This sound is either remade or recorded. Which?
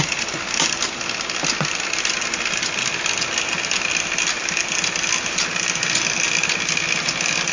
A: recorded